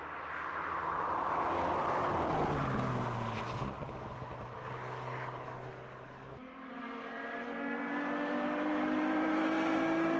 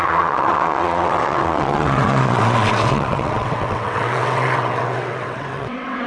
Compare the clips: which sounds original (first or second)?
first